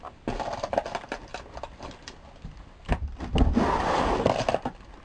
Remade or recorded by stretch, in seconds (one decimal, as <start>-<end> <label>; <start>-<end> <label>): 0.0-5.0 recorded